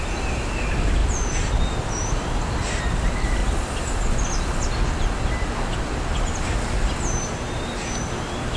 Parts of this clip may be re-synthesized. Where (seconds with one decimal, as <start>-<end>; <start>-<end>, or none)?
0.0-3.4